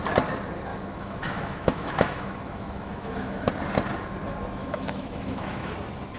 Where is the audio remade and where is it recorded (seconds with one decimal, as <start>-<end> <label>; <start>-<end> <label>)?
0.0-0.7 recorded; 0.7-3.5 remade; 3.5-4.6 recorded; 4.6-5.7 remade; 5.7-6.2 recorded